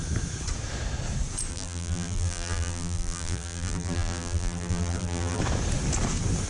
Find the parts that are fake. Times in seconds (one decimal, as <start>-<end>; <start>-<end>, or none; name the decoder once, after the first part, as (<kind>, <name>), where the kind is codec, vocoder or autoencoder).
1.5-5.4 (vocoder, BigVGAN v2)